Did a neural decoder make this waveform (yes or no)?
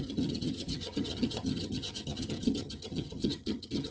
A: yes